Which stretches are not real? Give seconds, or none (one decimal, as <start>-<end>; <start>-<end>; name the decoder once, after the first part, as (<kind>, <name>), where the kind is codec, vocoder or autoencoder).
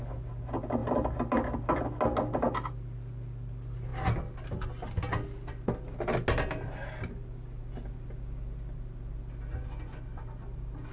none